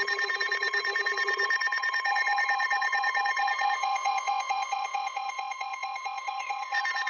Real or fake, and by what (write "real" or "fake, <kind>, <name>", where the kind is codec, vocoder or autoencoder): fake, vocoder, WaveNeXt